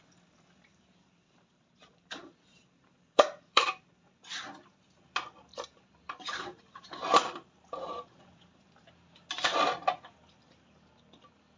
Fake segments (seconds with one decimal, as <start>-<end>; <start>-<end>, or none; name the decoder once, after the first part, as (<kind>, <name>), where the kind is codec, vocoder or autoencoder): 0.7-4.4 (vocoder, BigVGAN v2); 5.5-9.3